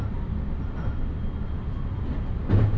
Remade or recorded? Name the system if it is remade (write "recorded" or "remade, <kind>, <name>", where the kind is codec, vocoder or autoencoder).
recorded